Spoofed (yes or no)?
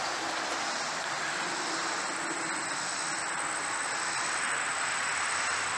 no